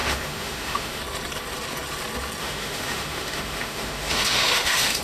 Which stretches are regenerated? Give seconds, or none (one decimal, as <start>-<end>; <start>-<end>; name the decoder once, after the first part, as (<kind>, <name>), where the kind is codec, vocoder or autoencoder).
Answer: 0.0-1.0 (autoencoder, DAC-VAE); 2.4-5.0